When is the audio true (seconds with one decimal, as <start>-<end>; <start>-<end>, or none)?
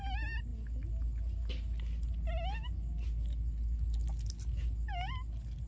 0.0-5.7